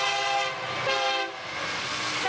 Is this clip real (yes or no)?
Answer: yes